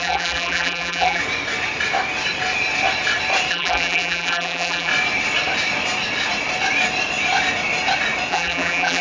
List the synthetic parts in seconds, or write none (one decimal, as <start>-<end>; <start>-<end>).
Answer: 0.0-1.2; 3.5-4.9; 8.3-9.0